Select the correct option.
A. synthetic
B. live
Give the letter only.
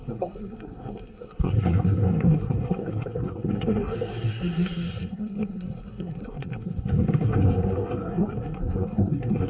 A